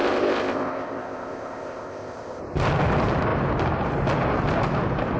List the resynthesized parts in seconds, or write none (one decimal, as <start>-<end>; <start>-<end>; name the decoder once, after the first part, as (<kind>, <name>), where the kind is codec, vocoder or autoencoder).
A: 0.0-2.4 (codec, ZipCodec)